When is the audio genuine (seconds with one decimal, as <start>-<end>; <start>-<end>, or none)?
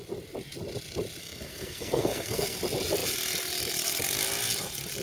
0.0-1.2; 2.6-5.0